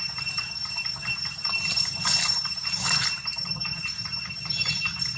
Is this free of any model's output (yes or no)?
yes